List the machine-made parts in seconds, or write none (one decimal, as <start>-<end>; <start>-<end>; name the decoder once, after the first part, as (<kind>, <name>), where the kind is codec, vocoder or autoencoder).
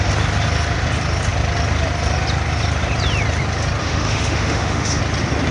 3.8-5.0 (autoencoder, DAC-VAE)